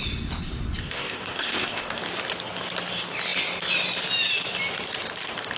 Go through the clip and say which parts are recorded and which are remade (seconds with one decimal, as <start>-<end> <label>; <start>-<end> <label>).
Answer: 0.0-0.8 recorded; 0.8-2.0 remade; 2.0-5.6 recorded